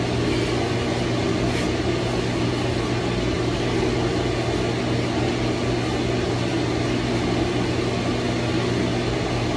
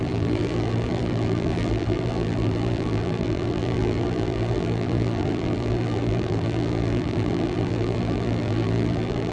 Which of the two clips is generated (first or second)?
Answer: second